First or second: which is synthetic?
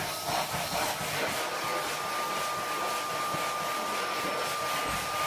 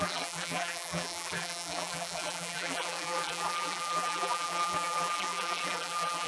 second